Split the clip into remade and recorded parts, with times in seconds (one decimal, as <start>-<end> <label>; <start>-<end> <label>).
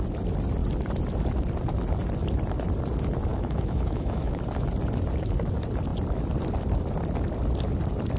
0.0-3.3 recorded; 3.3-4.4 remade; 4.4-8.2 recorded